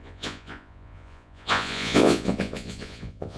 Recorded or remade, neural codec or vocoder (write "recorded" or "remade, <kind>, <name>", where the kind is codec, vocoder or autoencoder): remade, vocoder, Vocos